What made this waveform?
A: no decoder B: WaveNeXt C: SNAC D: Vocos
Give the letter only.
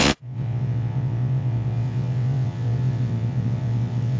B